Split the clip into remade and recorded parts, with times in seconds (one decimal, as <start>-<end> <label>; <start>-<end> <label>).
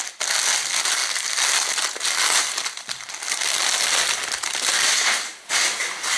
0.0-6.2 recorded